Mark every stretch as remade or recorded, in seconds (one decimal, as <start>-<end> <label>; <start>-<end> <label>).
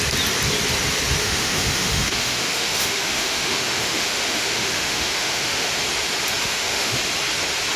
0.0-1.2 recorded; 1.2-5.7 remade; 5.7-6.4 recorded; 6.4-7.0 remade; 7.0-7.8 recorded